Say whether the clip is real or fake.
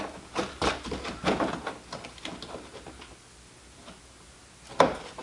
real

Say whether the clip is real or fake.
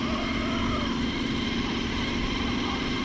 real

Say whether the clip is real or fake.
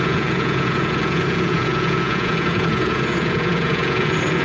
fake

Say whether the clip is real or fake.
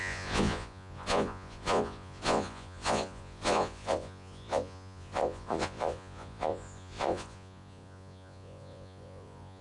fake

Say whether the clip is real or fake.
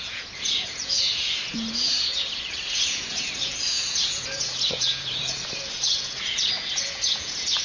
fake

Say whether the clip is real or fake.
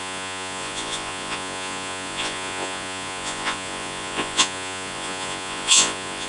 fake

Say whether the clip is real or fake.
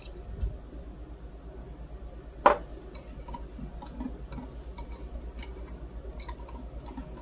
real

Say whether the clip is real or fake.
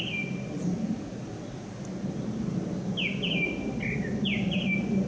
real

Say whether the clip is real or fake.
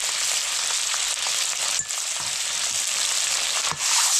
real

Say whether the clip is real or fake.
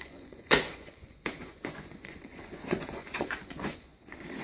fake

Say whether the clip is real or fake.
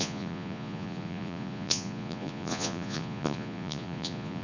fake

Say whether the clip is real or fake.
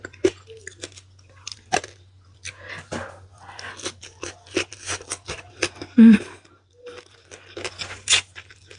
real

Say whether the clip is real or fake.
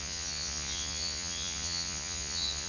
fake